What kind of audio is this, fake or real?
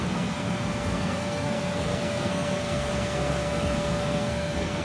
fake